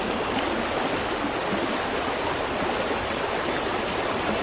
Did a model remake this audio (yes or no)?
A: no